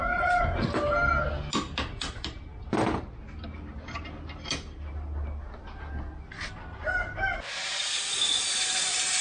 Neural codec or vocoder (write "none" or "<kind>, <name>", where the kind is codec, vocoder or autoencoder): none